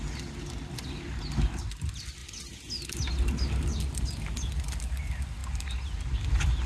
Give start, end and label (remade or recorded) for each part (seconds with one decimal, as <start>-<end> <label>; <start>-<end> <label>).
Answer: 0.0-6.7 recorded